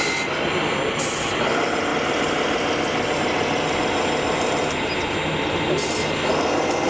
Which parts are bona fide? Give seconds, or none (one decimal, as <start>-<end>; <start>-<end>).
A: 0.0-6.9